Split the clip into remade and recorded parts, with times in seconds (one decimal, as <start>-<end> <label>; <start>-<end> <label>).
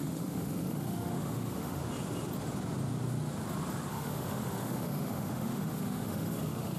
0.0-1.8 remade; 1.8-3.9 recorded; 3.9-6.8 remade